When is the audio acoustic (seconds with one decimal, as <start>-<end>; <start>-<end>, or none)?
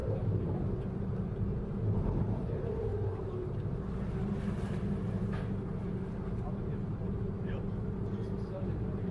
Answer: 0.0-0.8; 2.9-6.0